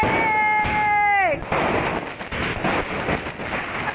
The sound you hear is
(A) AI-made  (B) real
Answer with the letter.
B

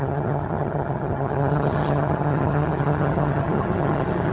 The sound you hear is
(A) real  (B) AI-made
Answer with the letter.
B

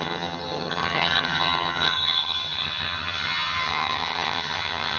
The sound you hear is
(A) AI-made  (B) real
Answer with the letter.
A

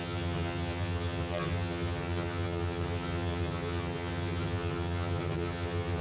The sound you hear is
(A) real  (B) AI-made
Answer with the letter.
B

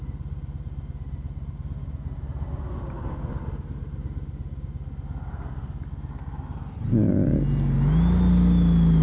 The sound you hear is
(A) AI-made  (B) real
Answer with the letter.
B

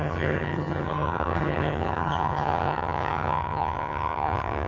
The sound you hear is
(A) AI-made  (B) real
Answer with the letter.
A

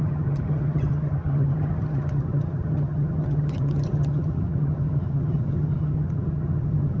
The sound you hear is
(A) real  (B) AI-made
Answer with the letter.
B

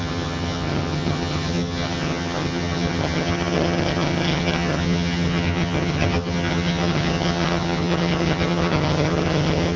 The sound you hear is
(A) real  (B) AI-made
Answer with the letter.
B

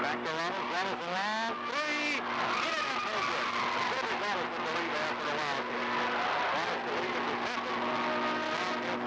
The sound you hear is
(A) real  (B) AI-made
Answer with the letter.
A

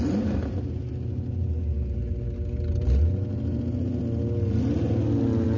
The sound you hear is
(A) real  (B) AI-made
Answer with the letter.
A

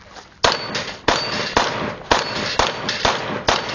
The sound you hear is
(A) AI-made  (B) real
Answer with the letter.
B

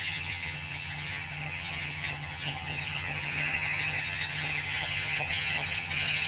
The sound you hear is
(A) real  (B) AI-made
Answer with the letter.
B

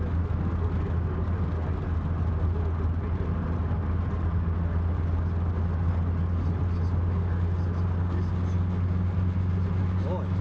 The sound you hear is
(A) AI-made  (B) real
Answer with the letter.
B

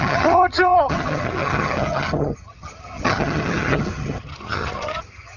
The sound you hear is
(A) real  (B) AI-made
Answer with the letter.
B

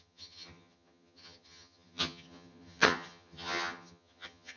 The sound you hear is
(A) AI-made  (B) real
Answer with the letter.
A